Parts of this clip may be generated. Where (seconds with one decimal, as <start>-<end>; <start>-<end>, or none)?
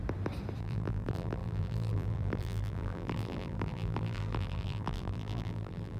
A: 0.6-6.0